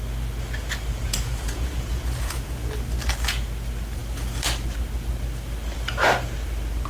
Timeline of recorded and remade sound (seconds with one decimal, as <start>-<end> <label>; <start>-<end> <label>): 0.0-0.9 recorded; 0.9-2.7 remade; 2.7-6.9 recorded